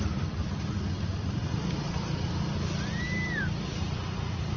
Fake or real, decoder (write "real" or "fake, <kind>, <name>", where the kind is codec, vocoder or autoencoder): real